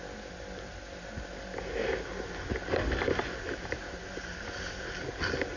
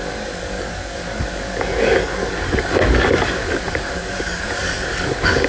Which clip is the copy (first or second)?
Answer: second